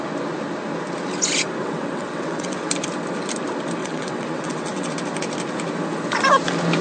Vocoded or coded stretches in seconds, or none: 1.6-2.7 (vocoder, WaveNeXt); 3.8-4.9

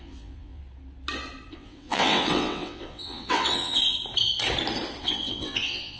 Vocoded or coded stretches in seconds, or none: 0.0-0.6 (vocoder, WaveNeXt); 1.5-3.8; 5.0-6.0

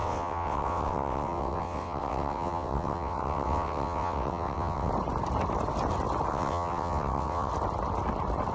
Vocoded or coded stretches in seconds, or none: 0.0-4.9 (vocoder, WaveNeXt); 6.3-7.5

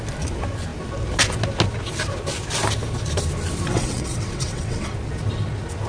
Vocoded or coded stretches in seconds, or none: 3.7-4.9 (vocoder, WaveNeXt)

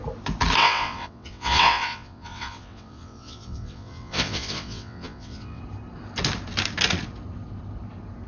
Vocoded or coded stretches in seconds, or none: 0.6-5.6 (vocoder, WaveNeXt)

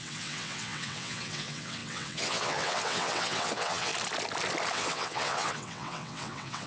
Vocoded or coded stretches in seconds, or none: 0.0-3.9 (vocoder, WaveNeXt); 4.7-6.7

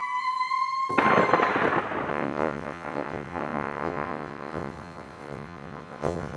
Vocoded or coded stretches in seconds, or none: 2.1-6.4 (vocoder, WaveNeXt)